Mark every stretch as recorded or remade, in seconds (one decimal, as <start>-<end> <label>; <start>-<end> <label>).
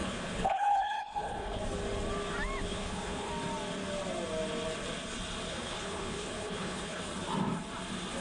0.0-1.6 remade; 1.6-2.6 recorded; 2.6-3.3 remade; 3.3-5.5 recorded; 5.5-7.0 remade; 7.0-8.2 recorded